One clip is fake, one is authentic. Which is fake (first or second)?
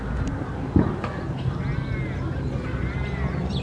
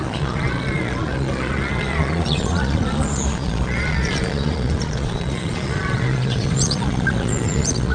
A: second